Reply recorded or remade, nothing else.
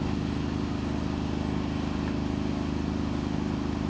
recorded